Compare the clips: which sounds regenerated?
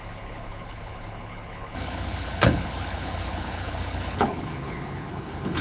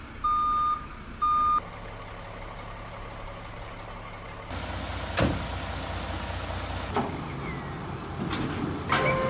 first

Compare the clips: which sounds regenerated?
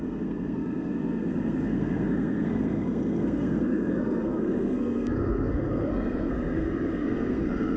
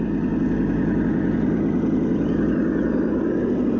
first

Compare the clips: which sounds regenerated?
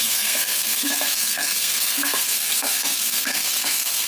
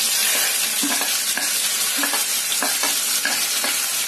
first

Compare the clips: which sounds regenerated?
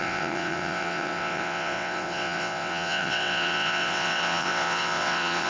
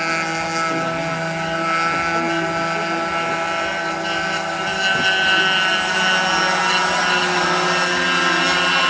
first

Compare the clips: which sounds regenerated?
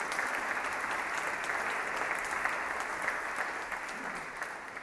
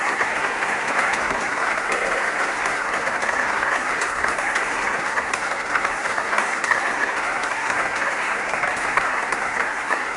second